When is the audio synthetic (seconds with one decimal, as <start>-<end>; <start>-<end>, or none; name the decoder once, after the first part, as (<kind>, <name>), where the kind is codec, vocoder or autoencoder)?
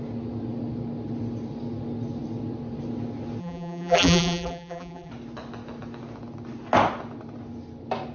3.4-5.1 (vocoder, BigVGAN v2)